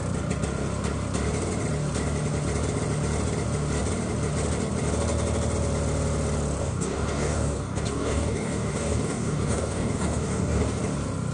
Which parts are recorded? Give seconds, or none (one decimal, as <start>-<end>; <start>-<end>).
0.0-6.6; 10.8-11.3